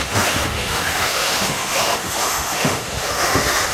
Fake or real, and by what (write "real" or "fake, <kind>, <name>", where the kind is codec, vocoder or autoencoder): fake, autoencoder, DAC-VAE